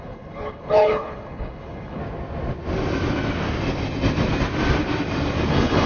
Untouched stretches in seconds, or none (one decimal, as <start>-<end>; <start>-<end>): 2.0-5.5